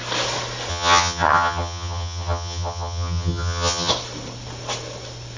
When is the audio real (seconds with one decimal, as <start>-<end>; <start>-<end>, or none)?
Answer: 0.0-0.7; 3.9-5.4